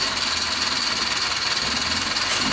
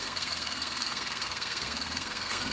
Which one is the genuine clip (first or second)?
first